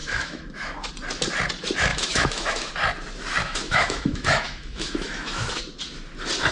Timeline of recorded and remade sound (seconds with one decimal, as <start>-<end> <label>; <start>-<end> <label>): 0.0-0.9 remade; 0.9-1.9 recorded; 1.9-2.7 remade; 2.7-3.4 recorded; 3.4-5.6 remade; 5.6-6.5 recorded

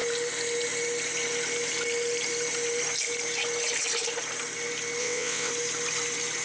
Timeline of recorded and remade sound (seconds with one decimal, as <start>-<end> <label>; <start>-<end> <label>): 0.0-5.0 recorded; 5.0-5.5 remade; 5.5-6.4 recorded

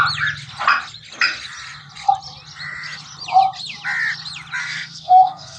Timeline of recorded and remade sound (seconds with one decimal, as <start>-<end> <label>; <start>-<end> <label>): 0.0-4.6 recorded; 4.6-5.6 remade

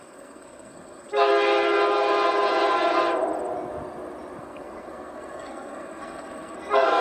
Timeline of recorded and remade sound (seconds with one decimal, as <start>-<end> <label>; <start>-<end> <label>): 0.0-1.3 remade; 1.3-4.4 recorded; 4.4-7.0 remade

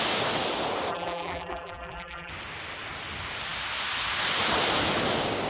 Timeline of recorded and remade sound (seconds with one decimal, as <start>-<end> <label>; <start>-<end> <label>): 0.0-0.9 recorded; 0.9-2.3 remade; 2.3-5.5 recorded

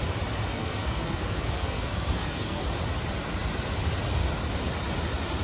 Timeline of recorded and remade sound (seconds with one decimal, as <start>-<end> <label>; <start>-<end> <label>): 0.0-0.5 recorded; 0.5-2.6 remade; 2.6-5.4 recorded